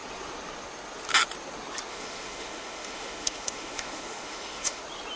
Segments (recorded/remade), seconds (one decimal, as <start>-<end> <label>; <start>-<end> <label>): 0.0-1.9 recorded; 1.9-4.8 remade; 4.8-5.2 recorded